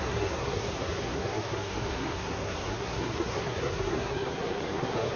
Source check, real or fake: fake